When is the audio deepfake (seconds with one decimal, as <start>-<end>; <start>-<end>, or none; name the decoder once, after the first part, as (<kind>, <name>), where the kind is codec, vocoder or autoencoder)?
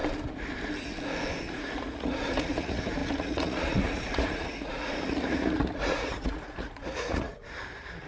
1.4-7.4 (vocoder, Vocos)